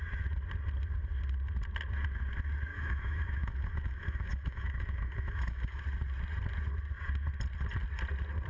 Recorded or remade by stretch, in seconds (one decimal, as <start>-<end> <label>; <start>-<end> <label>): 0.0-2.7 recorded; 2.7-5.8 remade; 5.8-8.5 recorded